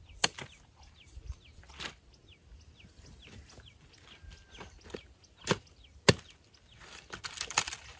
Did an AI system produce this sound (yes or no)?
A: no